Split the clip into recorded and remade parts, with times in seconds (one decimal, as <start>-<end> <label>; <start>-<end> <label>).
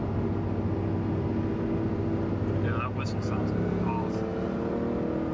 0.0-5.3 recorded